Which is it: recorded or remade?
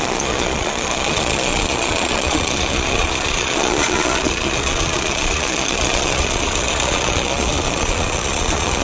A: remade